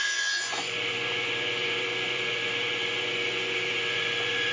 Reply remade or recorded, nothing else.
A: remade